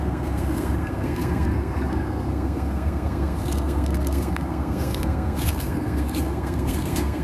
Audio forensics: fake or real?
fake